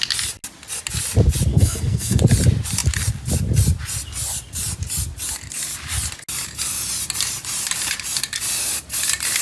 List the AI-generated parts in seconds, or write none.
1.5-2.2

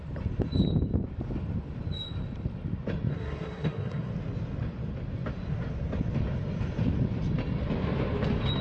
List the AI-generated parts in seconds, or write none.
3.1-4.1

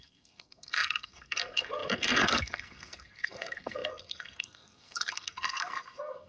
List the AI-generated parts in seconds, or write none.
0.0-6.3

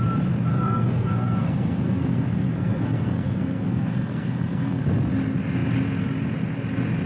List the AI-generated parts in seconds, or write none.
0.5-4.8